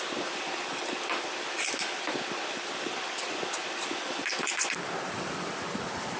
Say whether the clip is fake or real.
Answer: fake